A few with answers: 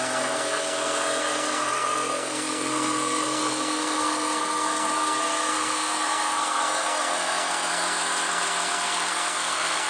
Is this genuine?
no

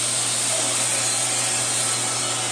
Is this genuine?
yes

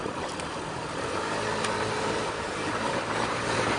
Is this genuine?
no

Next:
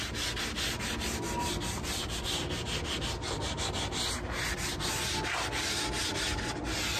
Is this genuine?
yes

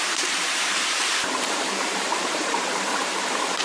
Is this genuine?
no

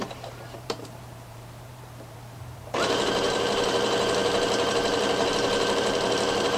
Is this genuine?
no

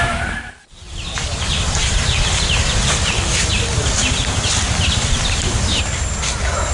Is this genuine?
yes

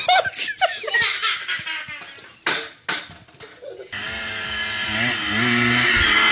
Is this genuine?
yes